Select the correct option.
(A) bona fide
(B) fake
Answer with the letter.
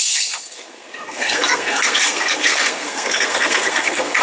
B